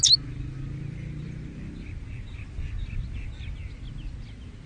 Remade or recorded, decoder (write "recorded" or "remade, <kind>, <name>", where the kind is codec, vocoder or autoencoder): recorded